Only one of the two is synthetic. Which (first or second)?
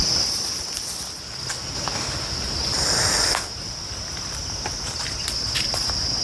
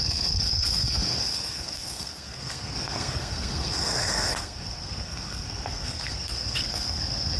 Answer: second